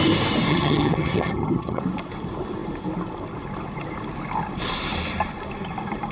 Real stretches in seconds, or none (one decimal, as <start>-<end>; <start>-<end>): 0.0-0.5; 1.8-6.1